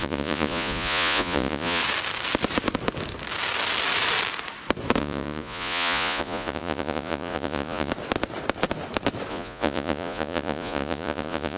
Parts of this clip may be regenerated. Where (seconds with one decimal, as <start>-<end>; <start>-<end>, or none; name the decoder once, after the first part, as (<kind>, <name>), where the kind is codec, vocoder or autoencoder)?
0.0-1.8 (vocoder, Vocos); 5.0-7.9; 9.3-11.6

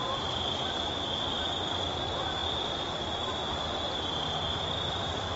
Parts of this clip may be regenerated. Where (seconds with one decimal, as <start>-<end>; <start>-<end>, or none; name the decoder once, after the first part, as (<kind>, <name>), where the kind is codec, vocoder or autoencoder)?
0.0-2.4 (vocoder, BigVGAN v2); 4.9-5.4